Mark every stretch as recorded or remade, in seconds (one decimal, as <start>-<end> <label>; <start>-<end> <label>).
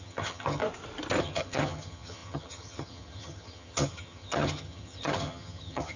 0.0-0.6 remade; 0.6-1.2 recorded; 1.2-6.0 remade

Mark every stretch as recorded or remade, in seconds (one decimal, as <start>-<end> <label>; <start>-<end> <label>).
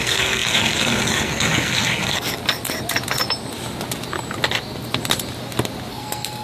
0.0-2.4 remade; 2.4-5.9 recorded; 5.9-6.4 remade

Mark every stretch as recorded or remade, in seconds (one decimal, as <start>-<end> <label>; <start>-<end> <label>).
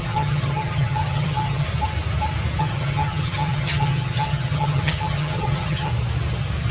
0.0-1.7 remade; 1.7-2.6 recorded; 2.6-5.9 remade; 5.9-6.7 recorded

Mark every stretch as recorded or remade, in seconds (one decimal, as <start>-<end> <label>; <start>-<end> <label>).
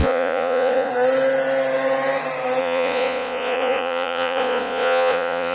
0.0-0.9 remade; 0.9-2.6 recorded; 2.6-5.5 remade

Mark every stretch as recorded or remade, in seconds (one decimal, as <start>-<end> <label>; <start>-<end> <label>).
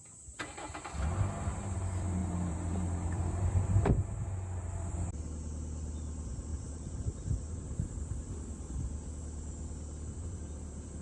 0.0-2.2 recorded; 2.2-4.9 remade; 4.9-6.5 recorded; 6.5-7.9 remade; 7.9-11.0 recorded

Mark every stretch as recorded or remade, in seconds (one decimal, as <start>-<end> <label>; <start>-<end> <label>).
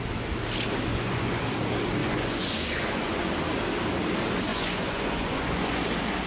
0.0-0.9 recorded; 0.9-1.4 remade; 1.4-2.0 recorded; 2.0-3.3 remade; 3.3-4.5 recorded; 4.5-5.8 remade; 5.8-6.3 recorded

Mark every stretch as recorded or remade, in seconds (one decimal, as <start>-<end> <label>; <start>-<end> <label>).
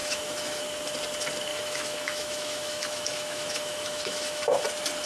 0.0-0.6 remade; 0.6-1.5 recorded; 1.5-4.4 remade; 4.4-5.1 recorded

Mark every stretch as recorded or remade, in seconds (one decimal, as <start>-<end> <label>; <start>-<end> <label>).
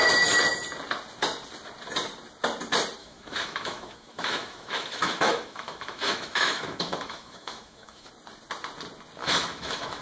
0.0-3.0 recorded; 3.0-8.1 remade; 8.1-9.2 recorded; 9.2-10.0 remade